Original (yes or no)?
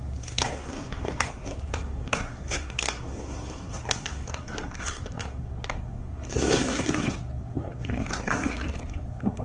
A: no